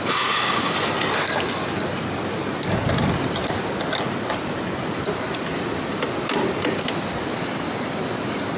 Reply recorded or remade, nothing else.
recorded